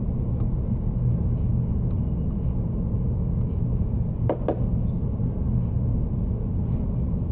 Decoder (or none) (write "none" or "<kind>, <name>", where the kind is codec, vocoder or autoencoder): none